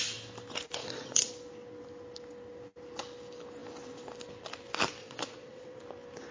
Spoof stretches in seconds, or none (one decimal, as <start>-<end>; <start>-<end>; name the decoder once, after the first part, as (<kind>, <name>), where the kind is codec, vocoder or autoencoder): 0.8-1.3 (vocoder, Vocos); 5.0-5.8